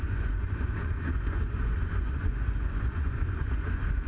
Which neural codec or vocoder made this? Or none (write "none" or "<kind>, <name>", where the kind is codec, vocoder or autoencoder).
vocoder, Vocos